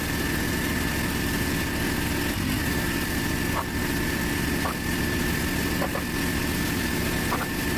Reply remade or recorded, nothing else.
recorded